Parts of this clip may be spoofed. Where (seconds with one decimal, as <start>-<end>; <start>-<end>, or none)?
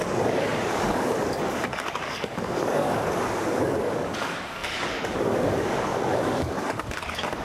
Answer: 0.0-7.4